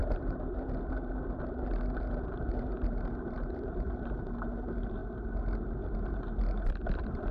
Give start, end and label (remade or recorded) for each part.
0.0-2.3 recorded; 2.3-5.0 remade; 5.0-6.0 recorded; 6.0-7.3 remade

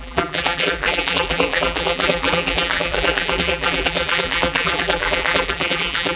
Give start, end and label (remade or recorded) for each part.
0.0-6.2 remade

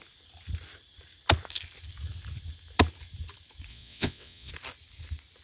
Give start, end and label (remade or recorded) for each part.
0.0-3.7 recorded; 3.7-4.5 remade; 4.5-5.4 recorded

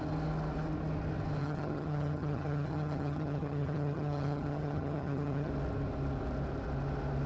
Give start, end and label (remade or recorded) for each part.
0.0-1.4 recorded; 1.4-5.5 remade; 5.5-7.3 recorded

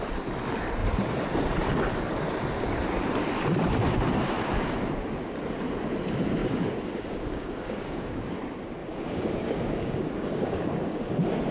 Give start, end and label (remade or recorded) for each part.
0.0-6.4 recorded; 6.4-8.3 remade; 8.3-8.8 recorded; 8.8-11.1 remade; 11.1-11.5 recorded

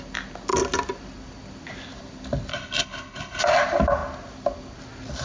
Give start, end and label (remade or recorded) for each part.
0.0-2.5 recorded; 2.5-3.4 remade; 3.4-5.2 recorded